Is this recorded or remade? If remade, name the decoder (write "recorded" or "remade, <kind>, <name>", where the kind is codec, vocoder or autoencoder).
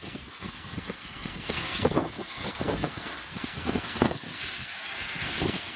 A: remade, codec, SNAC